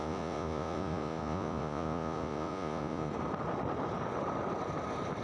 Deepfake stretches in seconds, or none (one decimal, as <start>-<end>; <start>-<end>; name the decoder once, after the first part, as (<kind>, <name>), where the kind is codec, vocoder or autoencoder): 0.0-3.1 (vocoder, Vocos)